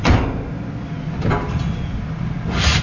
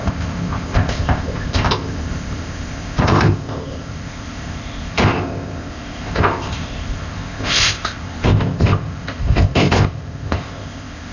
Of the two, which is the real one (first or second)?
first